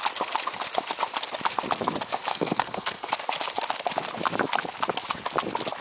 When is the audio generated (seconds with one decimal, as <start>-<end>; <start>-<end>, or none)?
2.3-3.1